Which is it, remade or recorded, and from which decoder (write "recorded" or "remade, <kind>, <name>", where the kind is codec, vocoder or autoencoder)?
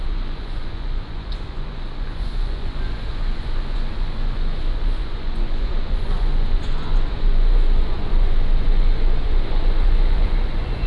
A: remade, vocoder, Vocos